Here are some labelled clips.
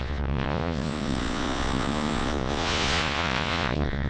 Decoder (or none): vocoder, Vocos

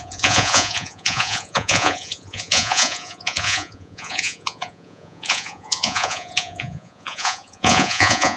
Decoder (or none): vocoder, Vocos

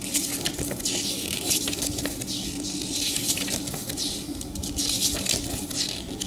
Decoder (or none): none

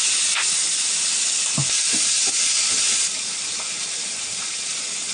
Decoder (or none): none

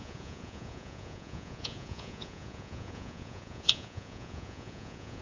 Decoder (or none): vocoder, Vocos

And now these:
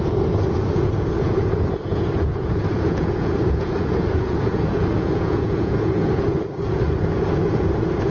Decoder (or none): vocoder, Vocos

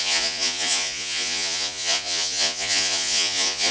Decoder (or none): vocoder, Vocos